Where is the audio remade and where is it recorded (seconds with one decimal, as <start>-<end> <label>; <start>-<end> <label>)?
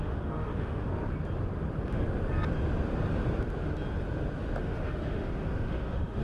0.0-0.9 remade; 0.9-4.6 recorded; 4.6-6.2 remade